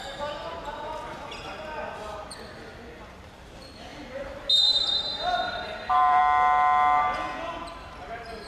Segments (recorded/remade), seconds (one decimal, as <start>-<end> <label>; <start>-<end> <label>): 0.0-5.1 recorded; 5.1-6.2 remade; 6.2-8.5 recorded